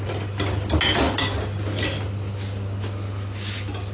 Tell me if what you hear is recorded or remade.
recorded